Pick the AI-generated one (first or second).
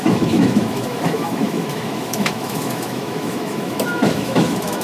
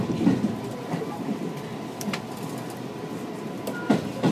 first